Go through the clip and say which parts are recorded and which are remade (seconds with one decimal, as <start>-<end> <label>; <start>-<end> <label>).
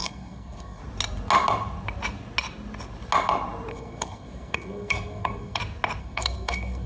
0.0-0.8 remade; 0.8-3.7 recorded; 3.7-5.6 remade; 5.6-6.0 recorded; 6.0-6.9 remade